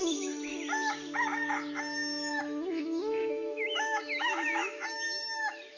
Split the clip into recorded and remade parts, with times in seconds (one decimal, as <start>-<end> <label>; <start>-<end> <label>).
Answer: 0.0-0.5 remade; 0.5-2.4 recorded; 2.4-5.8 remade